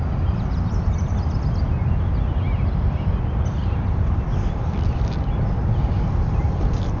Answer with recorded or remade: recorded